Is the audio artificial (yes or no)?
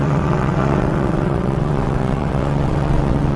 yes